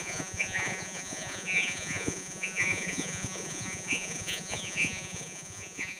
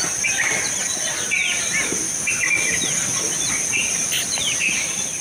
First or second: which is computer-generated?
first